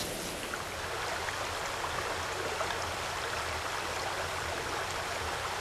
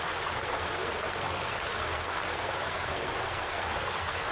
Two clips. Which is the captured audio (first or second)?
first